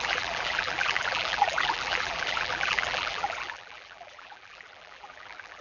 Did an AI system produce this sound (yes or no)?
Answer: yes